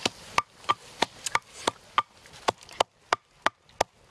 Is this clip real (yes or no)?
yes